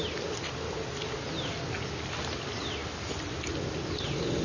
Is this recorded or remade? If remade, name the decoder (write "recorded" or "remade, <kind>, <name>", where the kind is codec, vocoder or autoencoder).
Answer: recorded